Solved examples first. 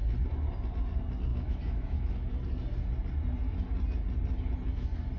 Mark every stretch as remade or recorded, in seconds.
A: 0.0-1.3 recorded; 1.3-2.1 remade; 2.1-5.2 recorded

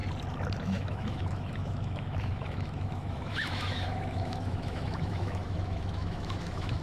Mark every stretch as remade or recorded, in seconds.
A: 0.0-0.6 recorded; 0.6-6.8 remade

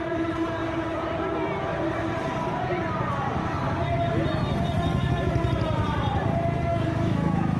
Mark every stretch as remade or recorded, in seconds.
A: 0.0-6.7 recorded; 6.7-7.6 remade

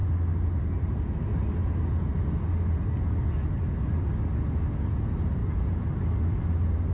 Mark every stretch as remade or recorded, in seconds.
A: 0.0-6.9 recorded

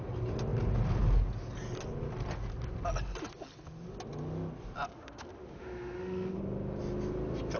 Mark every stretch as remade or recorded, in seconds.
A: 0.0-4.9 recorded; 4.9-6.4 remade; 6.4-7.6 recorded

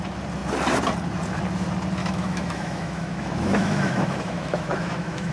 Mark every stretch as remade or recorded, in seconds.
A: 0.0-2.0 recorded; 2.0-5.3 remade

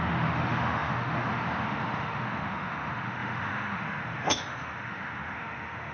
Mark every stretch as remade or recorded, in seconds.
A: 0.0-5.9 remade